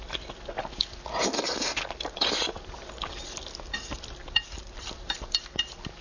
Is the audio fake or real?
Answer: real